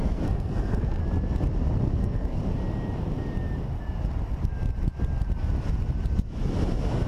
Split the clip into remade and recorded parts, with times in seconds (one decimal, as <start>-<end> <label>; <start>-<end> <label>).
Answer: 0.0-1.0 remade; 1.0-1.8 recorded; 1.8-2.4 remade; 2.4-7.1 recorded